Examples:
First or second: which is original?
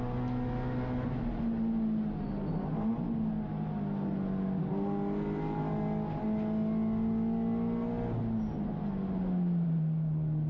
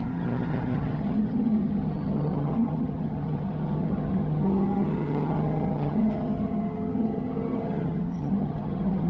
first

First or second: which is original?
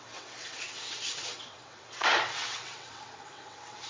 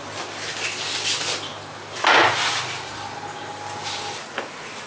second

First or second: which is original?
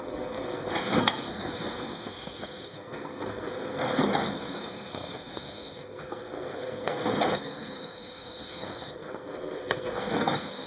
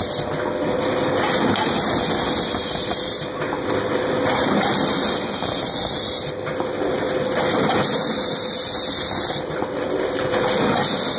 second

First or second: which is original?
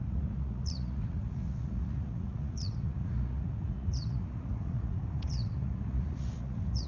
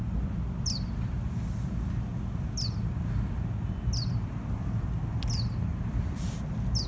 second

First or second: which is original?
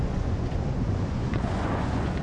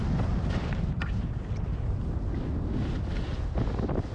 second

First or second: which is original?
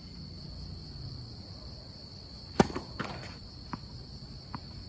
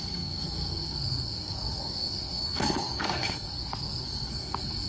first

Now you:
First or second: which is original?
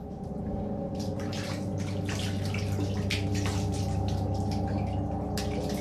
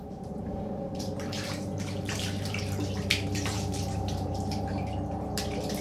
first